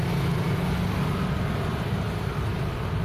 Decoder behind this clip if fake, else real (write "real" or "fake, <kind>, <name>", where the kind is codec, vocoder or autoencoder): real